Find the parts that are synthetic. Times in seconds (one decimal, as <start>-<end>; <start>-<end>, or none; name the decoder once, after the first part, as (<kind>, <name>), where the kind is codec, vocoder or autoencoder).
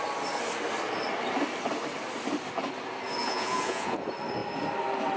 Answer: 3.2-4.0 (vocoder, Vocos)